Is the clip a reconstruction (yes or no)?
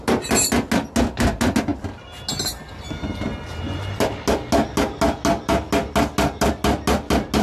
no